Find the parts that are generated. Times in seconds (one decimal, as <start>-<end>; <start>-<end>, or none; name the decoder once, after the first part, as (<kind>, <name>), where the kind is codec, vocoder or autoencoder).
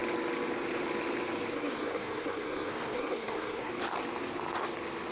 1.5-3.7 (codec, SNAC)